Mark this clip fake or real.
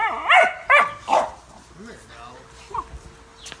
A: real